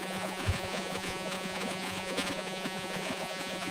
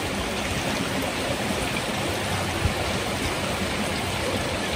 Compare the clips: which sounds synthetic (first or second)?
first